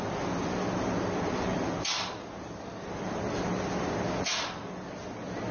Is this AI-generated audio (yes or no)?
no